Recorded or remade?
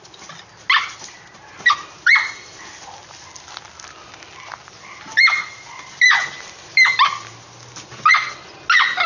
recorded